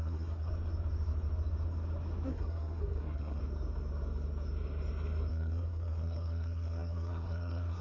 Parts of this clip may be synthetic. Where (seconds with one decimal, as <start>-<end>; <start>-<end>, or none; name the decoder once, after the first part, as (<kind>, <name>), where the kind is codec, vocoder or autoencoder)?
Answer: 0.0-0.5 (codec, SNAC); 2.3-3.4; 5.3-7.8